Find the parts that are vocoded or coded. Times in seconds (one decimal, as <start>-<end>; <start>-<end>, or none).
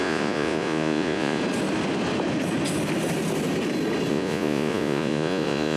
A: 0.0-1.4; 4.1-5.8